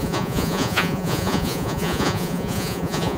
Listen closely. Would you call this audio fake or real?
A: fake